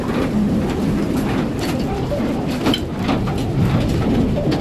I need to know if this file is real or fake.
real